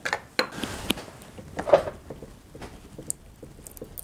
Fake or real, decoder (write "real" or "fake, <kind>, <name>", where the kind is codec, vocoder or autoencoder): real